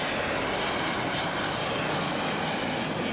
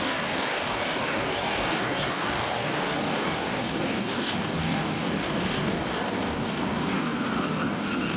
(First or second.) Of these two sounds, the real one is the first